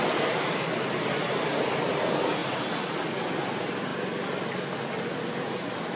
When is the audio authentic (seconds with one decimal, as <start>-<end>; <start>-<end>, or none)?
0.0-0.7; 1.9-6.0